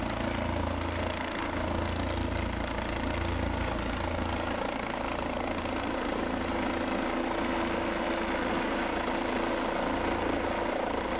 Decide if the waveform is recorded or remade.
recorded